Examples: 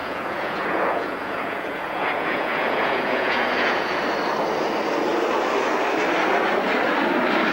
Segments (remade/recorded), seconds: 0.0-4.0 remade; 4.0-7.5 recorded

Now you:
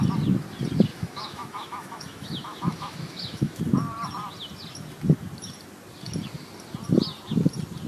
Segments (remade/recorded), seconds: 0.0-0.9 recorded; 0.9-3.6 remade; 3.6-7.9 recorded

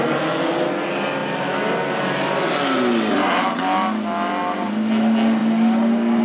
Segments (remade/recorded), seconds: 0.0-6.2 recorded

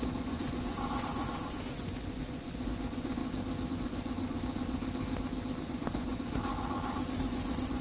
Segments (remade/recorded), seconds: 0.0-3.2 remade; 3.2-3.7 recorded; 3.7-4.8 remade; 4.8-5.7 recorded; 5.7-6.5 remade; 6.5-7.2 recorded; 7.2-7.8 remade

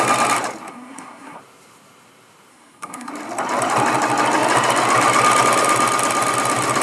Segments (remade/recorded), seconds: 0.0-0.7 recorded; 0.7-1.4 remade; 1.4-2.5 recorded; 2.5-3.1 remade; 3.1-6.8 recorded